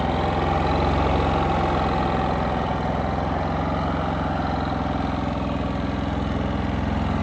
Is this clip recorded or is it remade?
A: recorded